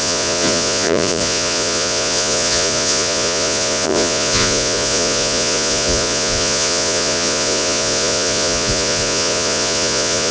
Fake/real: fake